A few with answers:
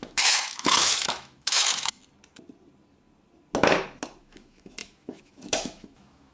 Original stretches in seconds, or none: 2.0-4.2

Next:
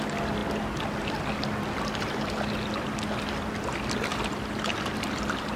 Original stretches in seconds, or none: 0.0-5.6